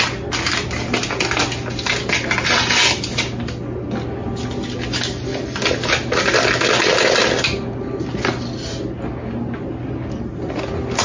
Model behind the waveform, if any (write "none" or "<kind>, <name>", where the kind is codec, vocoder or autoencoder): none